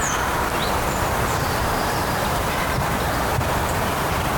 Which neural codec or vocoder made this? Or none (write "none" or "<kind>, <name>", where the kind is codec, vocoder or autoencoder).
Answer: vocoder, BigVGAN v2